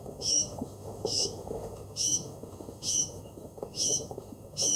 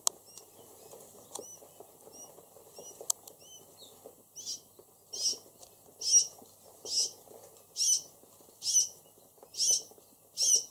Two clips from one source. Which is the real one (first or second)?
second